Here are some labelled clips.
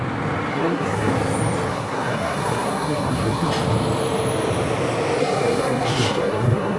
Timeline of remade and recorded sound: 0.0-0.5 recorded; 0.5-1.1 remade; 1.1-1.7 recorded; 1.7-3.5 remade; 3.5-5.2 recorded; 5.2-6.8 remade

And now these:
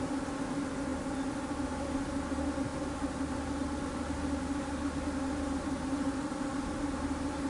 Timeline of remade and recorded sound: 0.0-7.5 recorded